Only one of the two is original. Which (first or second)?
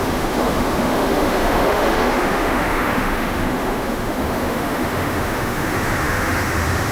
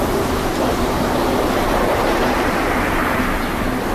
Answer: second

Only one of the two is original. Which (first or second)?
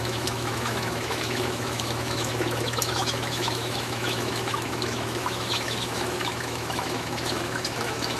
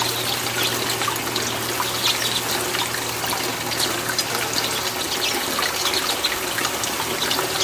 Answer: second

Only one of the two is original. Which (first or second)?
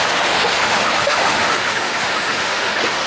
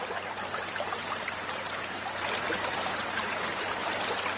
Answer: second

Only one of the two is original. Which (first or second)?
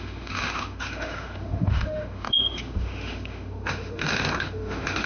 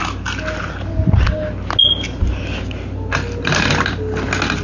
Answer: second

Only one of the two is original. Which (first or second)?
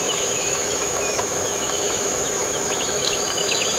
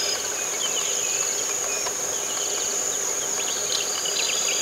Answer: second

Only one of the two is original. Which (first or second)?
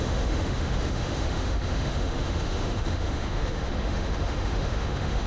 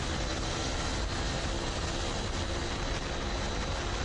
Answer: second